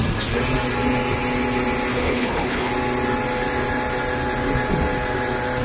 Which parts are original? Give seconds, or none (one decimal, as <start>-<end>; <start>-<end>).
0.0-1.9; 2.7-5.6